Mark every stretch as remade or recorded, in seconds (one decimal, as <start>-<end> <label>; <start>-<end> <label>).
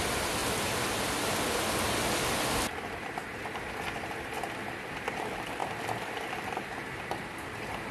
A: 0.0-7.9 recorded